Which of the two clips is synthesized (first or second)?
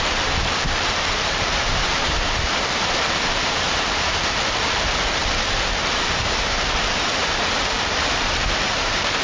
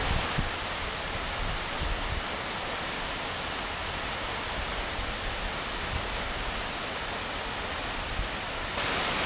first